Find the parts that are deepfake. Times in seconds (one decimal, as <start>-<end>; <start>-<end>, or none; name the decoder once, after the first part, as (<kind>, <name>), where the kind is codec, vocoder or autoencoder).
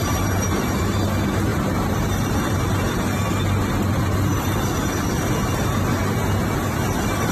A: 1.5-2.9 (vocoder, BigVGAN v2)